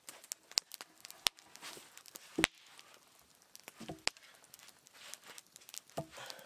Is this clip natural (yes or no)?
yes